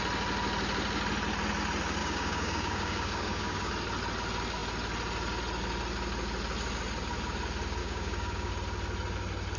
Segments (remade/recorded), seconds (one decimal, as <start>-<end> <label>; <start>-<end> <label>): 0.0-2.0 recorded; 2.0-3.7 remade; 3.7-7.8 recorded; 7.8-8.5 remade; 8.5-9.6 recorded